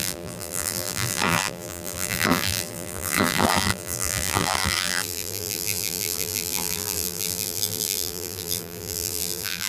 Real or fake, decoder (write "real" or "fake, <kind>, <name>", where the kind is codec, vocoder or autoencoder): fake, vocoder, BigVGAN v2